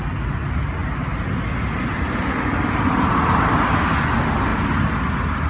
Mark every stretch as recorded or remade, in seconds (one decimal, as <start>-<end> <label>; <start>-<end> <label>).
0.0-5.5 recorded